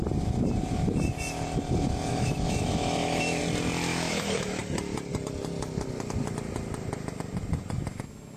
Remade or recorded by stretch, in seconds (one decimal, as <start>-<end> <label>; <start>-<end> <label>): 0.0-2.1 recorded; 2.1-3.4 remade; 3.4-3.9 recorded; 3.9-4.6 remade; 4.6-8.4 recorded